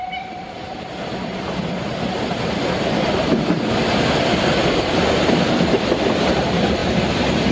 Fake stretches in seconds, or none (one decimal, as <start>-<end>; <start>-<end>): none